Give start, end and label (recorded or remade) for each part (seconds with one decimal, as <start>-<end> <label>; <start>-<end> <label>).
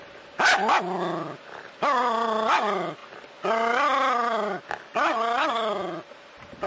0.0-6.7 recorded